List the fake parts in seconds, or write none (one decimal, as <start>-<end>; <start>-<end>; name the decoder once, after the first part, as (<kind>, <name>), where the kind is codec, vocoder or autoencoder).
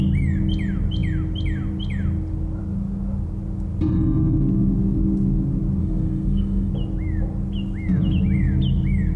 5.8-6.7 (codec, SNAC)